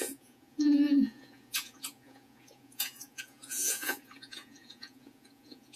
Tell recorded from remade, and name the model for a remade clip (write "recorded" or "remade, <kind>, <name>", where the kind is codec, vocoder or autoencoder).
remade, vocoder, Vocos